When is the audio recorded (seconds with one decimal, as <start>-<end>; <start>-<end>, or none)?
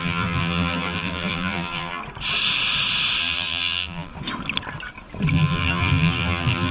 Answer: 2.0-3.2; 4.1-5.3